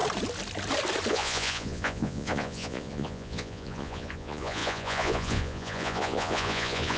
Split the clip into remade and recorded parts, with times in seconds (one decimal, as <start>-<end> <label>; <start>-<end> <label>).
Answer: 0.0-1.1 recorded; 1.1-7.0 remade